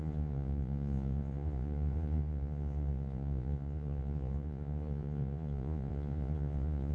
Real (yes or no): no